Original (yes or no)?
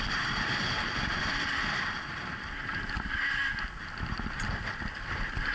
yes